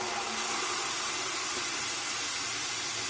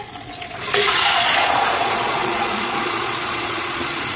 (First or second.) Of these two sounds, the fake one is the second